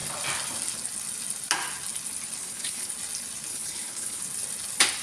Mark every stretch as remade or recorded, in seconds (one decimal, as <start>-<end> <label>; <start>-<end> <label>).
0.0-2.4 recorded; 2.4-2.9 remade; 2.9-3.5 recorded; 3.5-4.2 remade; 4.2-5.0 recorded